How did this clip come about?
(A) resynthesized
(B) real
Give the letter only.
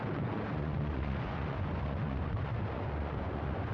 A